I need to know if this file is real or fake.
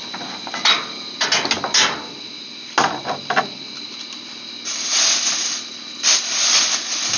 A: real